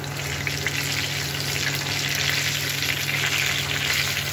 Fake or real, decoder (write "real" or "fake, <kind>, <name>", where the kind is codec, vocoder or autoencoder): real